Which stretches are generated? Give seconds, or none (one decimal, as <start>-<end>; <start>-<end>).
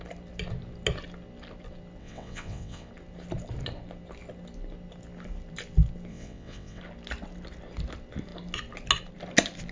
2.0-2.9; 6.1-6.8